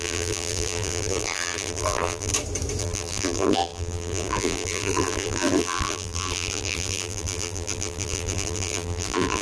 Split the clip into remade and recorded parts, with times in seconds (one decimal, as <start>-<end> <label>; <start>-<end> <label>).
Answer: 0.0-2.3 remade; 2.3-2.8 recorded; 2.8-9.4 remade